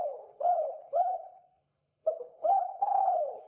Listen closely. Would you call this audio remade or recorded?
remade